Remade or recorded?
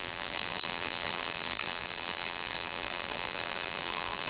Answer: remade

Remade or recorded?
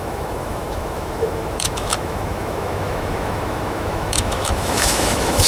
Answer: remade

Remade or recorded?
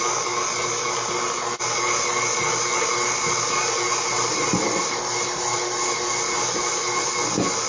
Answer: recorded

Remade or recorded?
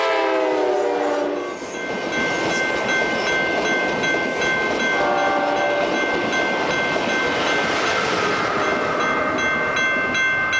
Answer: recorded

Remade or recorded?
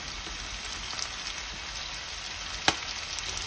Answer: recorded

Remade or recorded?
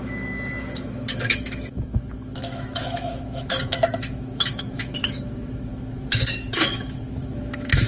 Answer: remade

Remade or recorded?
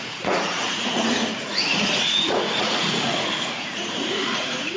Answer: remade